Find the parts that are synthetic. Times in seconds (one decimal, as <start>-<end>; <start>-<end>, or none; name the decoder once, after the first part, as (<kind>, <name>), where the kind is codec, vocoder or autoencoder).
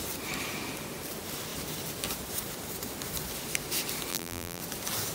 4.1-4.6 (vocoder, BigVGAN v2)